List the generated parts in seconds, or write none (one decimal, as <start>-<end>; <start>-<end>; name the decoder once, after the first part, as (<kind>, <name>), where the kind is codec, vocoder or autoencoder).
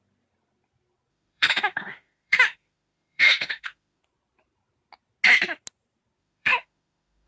1.1-4.0 (autoencoder, DAC-VAE); 6.2-7.3